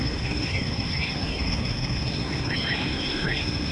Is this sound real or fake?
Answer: fake